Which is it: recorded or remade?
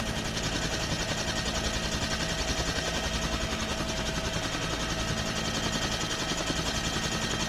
recorded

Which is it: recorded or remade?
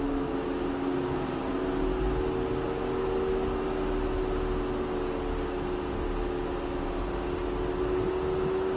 recorded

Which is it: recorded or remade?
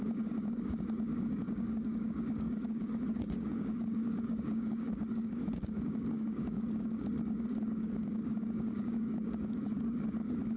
remade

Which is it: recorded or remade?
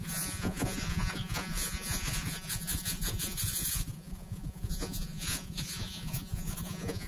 remade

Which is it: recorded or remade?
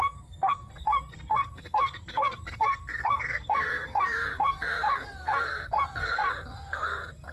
remade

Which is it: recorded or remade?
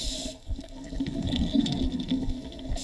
remade